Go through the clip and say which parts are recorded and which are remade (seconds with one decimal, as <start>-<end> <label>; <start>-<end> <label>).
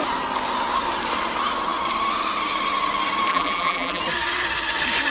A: 0.0-3.3 recorded; 3.3-4.0 remade; 4.0-5.1 recorded